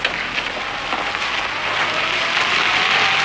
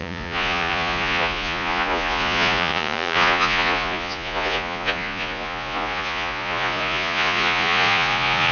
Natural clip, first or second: first